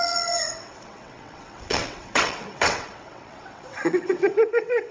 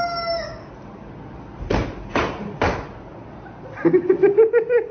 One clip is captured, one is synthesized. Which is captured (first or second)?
second